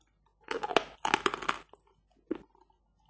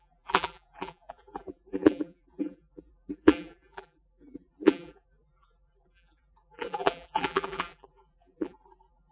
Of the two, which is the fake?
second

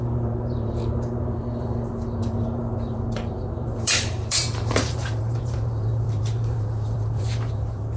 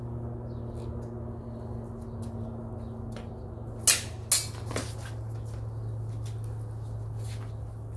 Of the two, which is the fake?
first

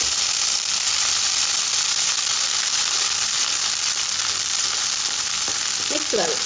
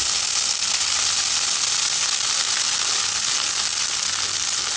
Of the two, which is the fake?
first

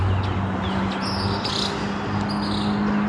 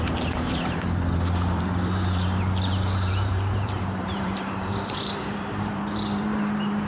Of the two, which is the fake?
second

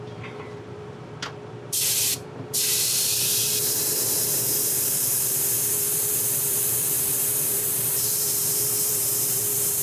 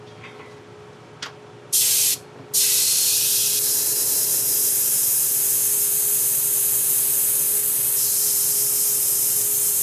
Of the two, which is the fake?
first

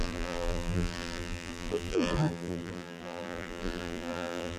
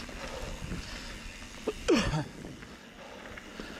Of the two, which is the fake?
first